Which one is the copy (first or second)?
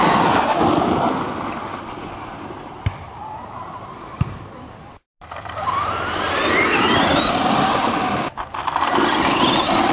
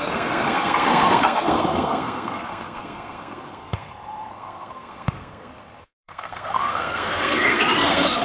second